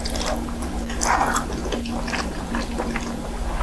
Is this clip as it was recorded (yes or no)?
yes